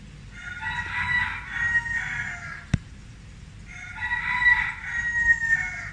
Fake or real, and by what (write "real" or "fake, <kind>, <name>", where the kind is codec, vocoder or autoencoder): real